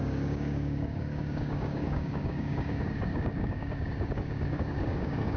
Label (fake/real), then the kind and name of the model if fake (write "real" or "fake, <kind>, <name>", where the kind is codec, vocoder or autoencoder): fake, codec, DAC